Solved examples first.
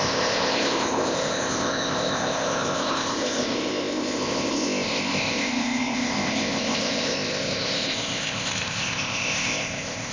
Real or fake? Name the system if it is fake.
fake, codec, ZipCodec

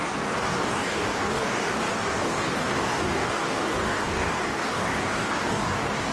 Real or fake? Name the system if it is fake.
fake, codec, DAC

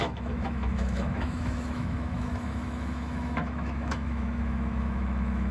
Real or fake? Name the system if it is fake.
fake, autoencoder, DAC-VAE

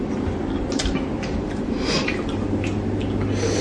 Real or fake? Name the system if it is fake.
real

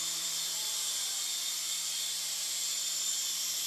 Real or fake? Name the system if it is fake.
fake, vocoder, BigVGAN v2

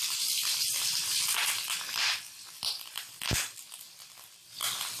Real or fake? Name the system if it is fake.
fake, vocoder, BigVGAN v2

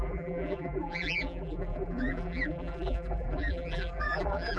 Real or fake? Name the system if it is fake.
fake, vocoder, BigVGAN v2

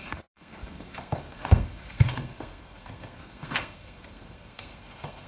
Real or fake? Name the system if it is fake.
fake, codec, SNAC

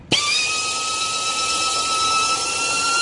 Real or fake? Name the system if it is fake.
real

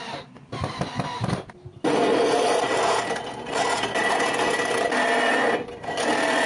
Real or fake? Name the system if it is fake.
real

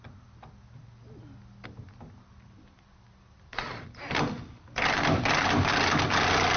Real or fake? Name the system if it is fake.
real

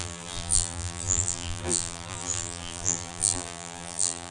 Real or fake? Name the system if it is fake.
fake, vocoder, BigVGAN v2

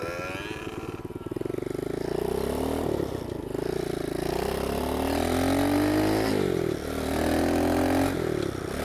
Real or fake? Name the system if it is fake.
real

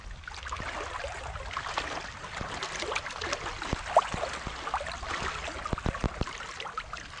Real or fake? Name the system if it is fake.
real